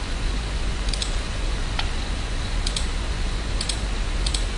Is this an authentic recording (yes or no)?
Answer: no